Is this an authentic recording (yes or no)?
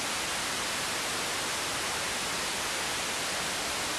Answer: yes